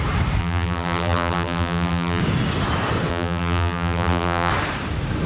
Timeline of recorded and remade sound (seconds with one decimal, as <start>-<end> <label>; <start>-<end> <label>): 0.0-0.4 recorded; 0.4-2.2 remade; 2.2-3.1 recorded; 3.1-4.5 remade; 4.5-5.3 recorded